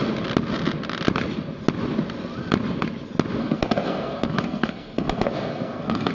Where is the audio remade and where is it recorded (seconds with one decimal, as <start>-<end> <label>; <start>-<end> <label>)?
0.0-3.4 recorded; 3.4-6.1 remade